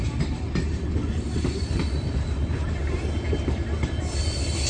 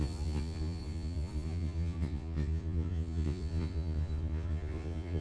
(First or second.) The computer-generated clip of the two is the second